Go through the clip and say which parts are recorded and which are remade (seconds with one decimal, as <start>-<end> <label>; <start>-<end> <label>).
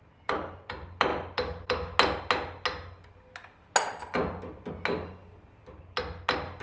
0.0-6.6 recorded